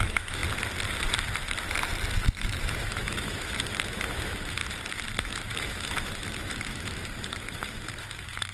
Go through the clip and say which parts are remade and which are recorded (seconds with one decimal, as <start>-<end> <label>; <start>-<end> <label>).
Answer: 0.0-0.4 remade; 0.4-2.2 recorded; 2.2-4.6 remade; 4.6-5.2 recorded; 5.2-8.5 remade